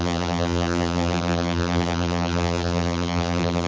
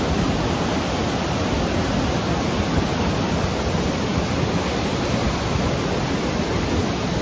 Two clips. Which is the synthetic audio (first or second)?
first